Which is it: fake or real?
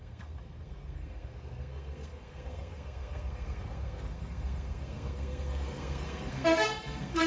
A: fake